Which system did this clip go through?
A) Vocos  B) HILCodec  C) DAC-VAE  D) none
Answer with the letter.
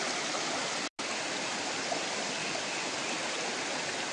D